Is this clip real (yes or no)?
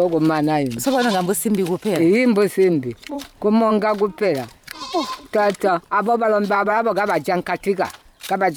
no